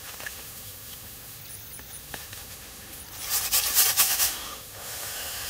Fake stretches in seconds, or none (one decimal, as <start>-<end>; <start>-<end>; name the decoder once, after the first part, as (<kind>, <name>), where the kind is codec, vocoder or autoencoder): 0.0-1.4 (autoencoder, DAC-VAE); 2.0-3.0; 4.0-5.5